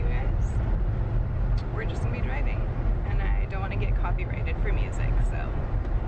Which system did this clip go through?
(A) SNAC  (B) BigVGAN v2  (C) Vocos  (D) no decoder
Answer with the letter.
D